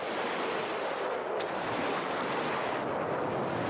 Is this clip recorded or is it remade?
recorded